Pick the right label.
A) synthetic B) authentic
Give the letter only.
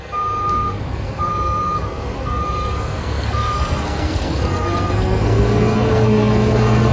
A